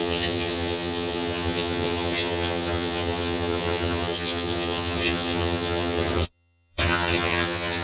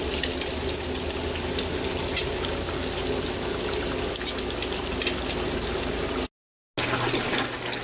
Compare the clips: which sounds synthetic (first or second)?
first